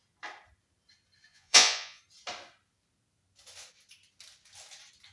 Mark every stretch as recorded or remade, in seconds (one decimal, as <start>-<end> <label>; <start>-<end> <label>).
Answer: 0.0-1.3 recorded; 1.3-2.0 remade; 2.0-5.1 recorded